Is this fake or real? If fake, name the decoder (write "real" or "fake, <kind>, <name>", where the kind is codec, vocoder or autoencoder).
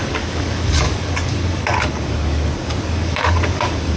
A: fake, codec, DAC